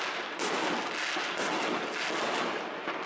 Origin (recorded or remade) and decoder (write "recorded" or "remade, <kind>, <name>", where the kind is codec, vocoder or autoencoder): recorded